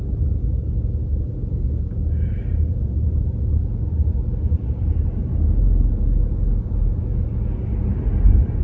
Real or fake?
real